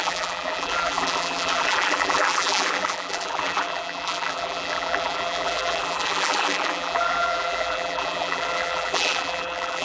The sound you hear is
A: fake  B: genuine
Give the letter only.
A